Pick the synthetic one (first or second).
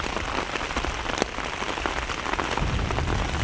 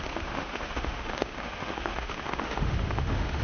second